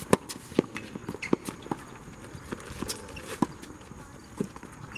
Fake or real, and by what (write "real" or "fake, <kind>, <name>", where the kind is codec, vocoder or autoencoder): real